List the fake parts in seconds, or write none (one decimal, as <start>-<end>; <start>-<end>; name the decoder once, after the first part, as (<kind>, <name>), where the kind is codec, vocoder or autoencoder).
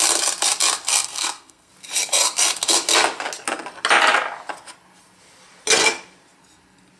0.9-1.7 (codec, SNAC)